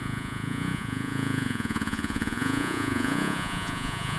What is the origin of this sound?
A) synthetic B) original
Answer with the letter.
A